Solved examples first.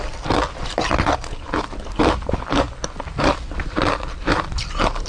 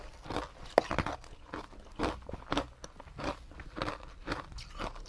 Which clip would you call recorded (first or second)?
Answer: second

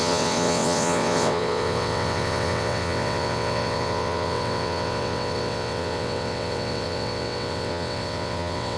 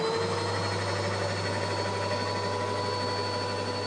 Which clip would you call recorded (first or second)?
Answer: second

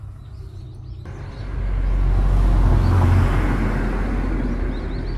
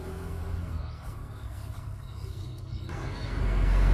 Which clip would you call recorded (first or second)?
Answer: first